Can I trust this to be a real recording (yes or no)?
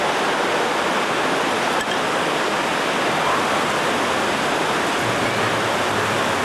yes